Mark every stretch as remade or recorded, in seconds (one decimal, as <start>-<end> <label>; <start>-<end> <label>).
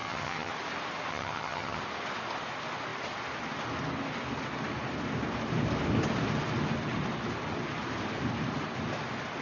0.0-0.5 remade; 0.5-1.1 recorded; 1.1-1.8 remade; 1.8-9.4 recorded